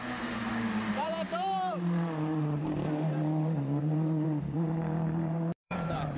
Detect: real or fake fake